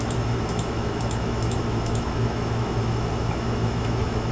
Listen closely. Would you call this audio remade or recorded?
remade